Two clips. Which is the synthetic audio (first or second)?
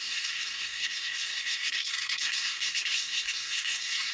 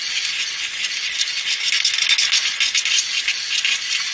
first